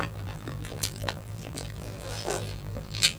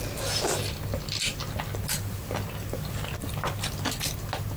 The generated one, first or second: first